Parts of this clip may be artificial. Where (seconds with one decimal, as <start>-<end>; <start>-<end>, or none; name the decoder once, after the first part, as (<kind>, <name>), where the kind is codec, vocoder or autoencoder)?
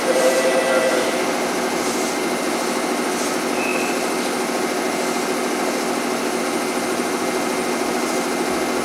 none